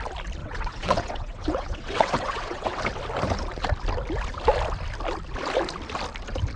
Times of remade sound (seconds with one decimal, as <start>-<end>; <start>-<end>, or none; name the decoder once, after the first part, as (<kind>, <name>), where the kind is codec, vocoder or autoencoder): 0.4-2.8 (vocoder, WaveNeXt)